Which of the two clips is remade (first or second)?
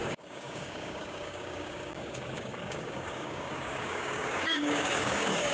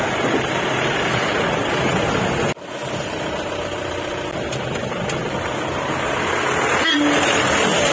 first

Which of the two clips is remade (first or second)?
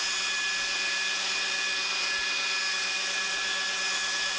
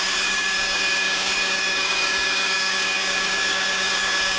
second